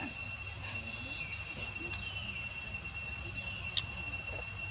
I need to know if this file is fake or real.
real